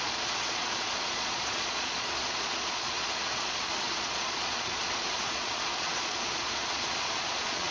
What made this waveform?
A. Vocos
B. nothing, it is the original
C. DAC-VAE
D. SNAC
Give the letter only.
A